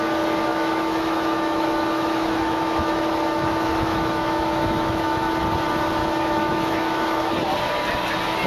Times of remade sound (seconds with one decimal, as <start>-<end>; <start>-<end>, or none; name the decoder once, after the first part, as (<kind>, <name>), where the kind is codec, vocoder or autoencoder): 0.5-5.3 (autoencoder, DAC-VAE); 6.0-7.3